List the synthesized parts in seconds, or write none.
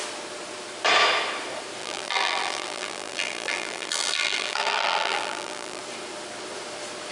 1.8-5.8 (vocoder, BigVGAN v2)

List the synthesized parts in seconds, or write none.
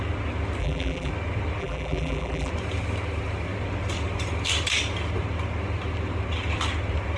0.6-1.1 (vocoder, BigVGAN v2); 1.6-2.5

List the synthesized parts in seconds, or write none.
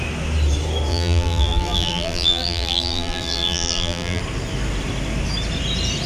0.9-4.2 (vocoder, BigVGAN v2)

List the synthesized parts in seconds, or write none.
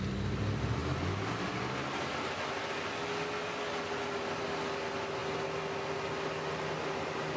none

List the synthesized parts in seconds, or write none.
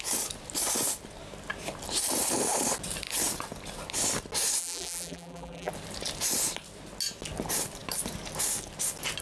4.6-5.7 (vocoder, BigVGAN v2)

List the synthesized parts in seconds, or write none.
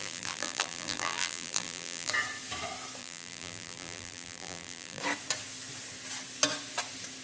0.0-2.1 (vocoder, BigVGAN v2); 3.0-5.0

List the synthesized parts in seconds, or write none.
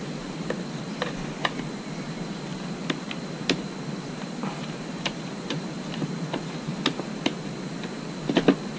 0.0-1.6 (vocoder, BigVGAN v2); 2.5-7.0